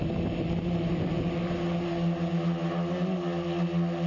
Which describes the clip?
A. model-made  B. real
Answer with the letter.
B